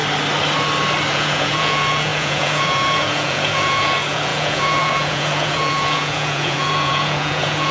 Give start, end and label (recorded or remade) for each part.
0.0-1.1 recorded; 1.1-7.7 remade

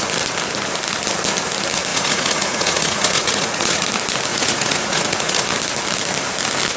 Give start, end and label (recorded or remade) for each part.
0.0-1.9 recorded; 1.9-3.9 remade; 3.9-4.3 recorded; 4.3-5.4 remade; 5.4-6.8 recorded